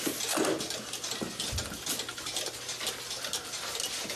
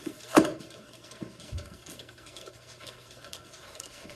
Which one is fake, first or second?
second